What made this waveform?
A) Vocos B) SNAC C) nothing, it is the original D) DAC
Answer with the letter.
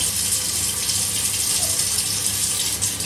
C